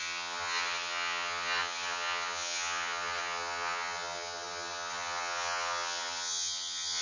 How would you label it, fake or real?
fake